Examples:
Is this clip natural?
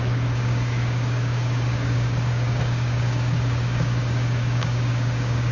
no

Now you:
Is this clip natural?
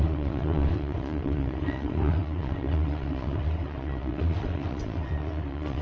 no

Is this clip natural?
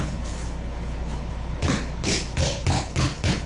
no